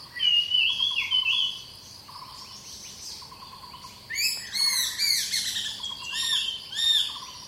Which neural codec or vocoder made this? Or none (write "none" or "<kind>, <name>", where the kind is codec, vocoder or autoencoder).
none